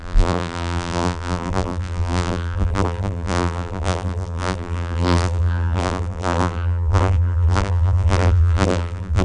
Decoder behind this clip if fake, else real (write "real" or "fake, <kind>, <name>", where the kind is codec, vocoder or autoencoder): fake, vocoder, BigVGAN v2